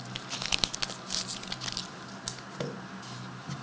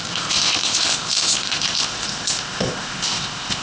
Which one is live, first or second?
first